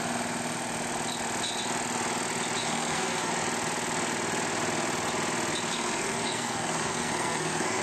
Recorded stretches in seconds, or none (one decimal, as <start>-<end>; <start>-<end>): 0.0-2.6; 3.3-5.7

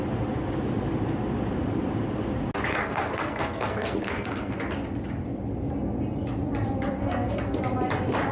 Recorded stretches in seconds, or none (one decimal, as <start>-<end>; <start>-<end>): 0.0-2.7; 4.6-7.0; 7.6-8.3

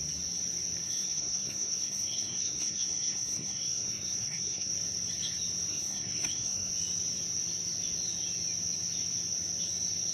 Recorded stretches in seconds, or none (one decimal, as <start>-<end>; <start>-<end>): 0.0-0.8; 4.7-5.7; 6.7-10.1

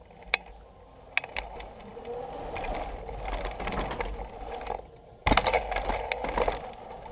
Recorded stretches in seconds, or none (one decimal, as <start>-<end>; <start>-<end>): 0.0-7.1

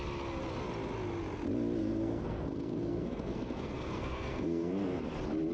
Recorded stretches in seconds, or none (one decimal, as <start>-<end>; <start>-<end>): 0.0-1.8; 5.0-5.5

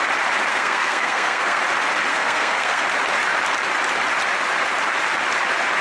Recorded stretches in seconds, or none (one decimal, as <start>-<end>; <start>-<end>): 0.0-0.5; 1.6-2.1; 2.8-5.8

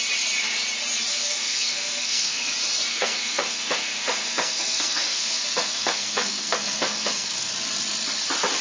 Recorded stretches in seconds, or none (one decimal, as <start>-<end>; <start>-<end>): 0.0-1.1; 2.5-2.9; 7.5-8.6

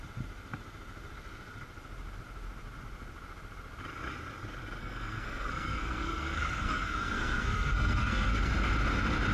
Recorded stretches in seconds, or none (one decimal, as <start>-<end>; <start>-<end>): 0.0-4.8; 8.5-9.3